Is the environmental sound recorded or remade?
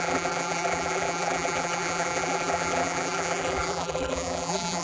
remade